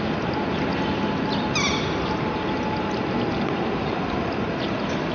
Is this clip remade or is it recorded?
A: recorded